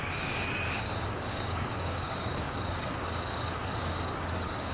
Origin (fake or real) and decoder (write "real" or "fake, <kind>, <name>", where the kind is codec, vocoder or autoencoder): fake, codec, DAC